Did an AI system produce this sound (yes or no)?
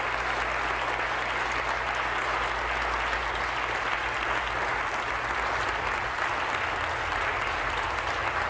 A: no